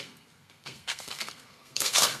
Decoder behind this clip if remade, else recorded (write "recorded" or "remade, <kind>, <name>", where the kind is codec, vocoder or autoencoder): remade, codec, SNAC